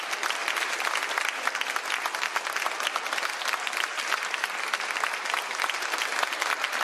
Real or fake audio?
real